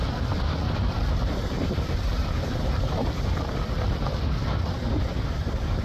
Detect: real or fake real